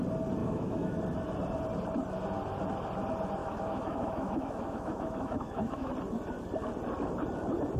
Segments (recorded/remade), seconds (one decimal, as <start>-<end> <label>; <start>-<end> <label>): 0.0-0.4 recorded; 0.4-1.0 remade; 1.0-3.4 recorded; 3.4-5.9 remade; 5.9-7.8 recorded